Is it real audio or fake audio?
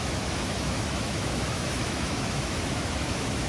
fake